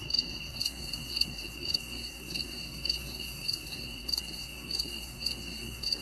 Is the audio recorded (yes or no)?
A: no